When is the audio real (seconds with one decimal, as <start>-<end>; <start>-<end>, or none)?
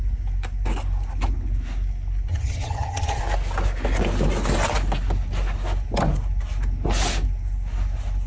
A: 0.0-2.3; 3.2-8.3